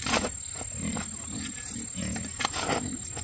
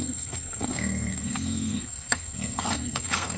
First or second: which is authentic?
first